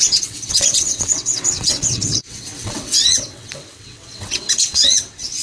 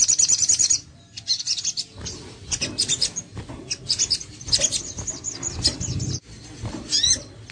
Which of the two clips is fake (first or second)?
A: first